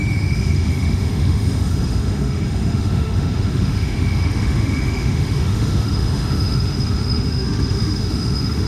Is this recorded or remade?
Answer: remade